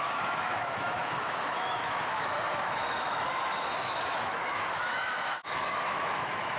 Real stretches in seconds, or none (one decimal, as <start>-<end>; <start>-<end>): none